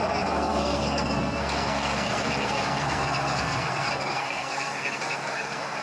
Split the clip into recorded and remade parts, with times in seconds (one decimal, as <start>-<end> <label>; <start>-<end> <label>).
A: 0.0-5.8 remade